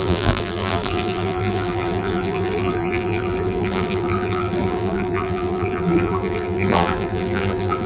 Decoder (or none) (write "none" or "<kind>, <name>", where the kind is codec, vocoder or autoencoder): vocoder, BigVGAN v2